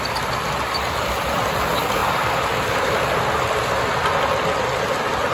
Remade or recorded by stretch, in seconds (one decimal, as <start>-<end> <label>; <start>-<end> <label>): 0.0-5.3 recorded